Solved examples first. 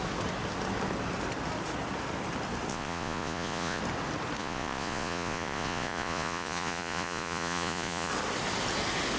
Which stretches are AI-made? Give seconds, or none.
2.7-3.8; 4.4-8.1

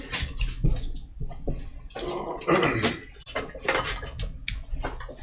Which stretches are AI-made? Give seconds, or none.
none

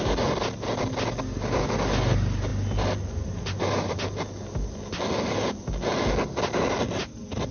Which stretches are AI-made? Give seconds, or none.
none

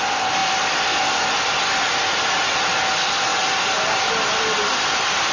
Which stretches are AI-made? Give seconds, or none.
none

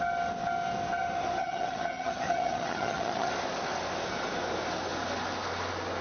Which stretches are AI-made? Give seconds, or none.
1.4-3.3

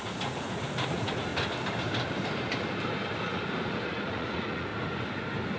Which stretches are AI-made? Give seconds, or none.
0.0-1.3; 3.2-4.7

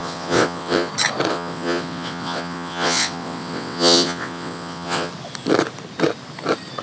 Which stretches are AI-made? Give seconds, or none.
0.0-0.9; 1.3-5.1

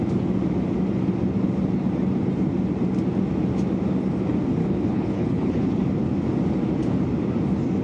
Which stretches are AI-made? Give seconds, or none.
4.6-5.8